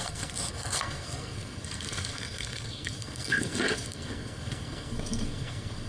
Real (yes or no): no